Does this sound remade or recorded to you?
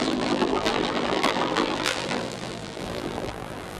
remade